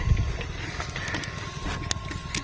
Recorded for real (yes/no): yes